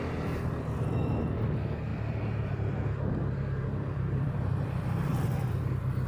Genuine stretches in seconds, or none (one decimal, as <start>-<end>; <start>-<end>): 0.0-1.9; 5.6-6.1